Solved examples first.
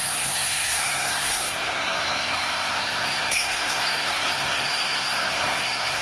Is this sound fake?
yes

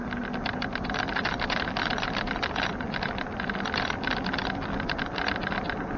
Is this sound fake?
no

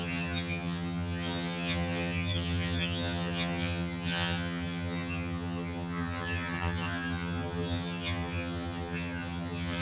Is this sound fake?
yes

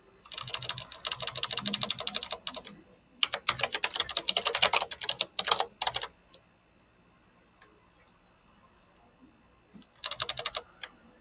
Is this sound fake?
no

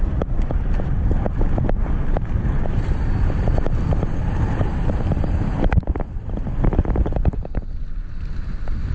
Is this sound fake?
no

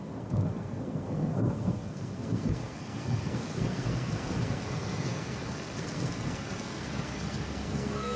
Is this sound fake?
yes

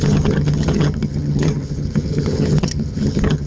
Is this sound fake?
yes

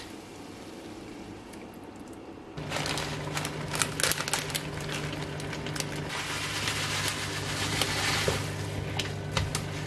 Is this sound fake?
no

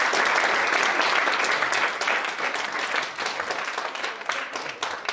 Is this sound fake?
no